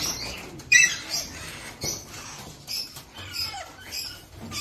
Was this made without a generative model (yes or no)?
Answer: no